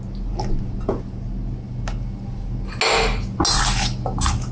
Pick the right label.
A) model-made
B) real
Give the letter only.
B